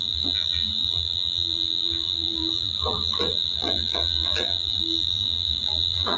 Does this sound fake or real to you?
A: fake